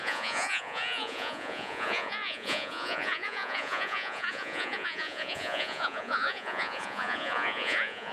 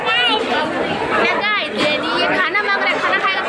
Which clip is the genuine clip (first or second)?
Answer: second